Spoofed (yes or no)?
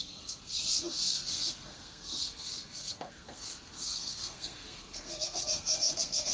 yes